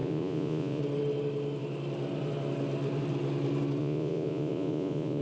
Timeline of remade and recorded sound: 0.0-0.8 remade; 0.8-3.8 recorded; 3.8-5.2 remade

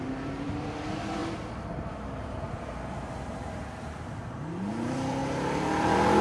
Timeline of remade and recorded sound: 0.0-6.2 remade